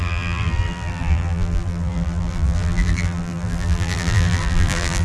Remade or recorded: remade